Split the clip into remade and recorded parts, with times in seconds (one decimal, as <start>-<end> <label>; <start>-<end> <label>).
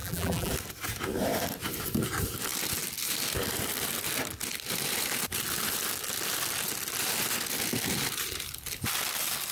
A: 0.0-0.5 remade; 0.5-9.5 recorded